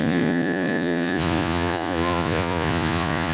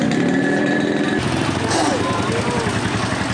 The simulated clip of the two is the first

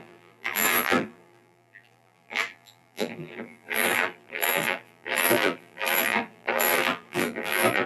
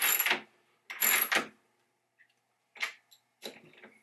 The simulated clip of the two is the first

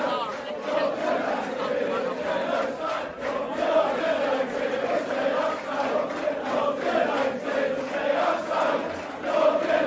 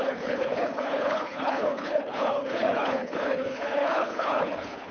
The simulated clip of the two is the second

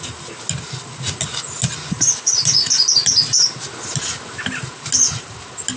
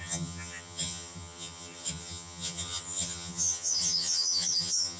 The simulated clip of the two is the second